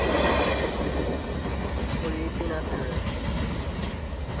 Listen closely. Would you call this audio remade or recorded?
recorded